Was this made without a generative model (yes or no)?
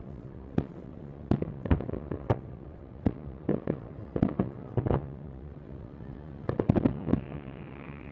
no